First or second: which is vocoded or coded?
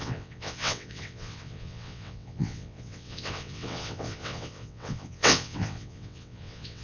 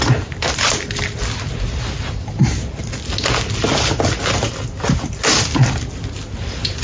first